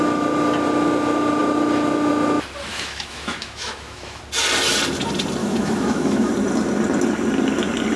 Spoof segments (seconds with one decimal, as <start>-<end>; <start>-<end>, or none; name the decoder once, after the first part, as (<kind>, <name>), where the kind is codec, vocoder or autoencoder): 2.7-4.2 (autoencoder, DAC-VAE); 5.4-6.3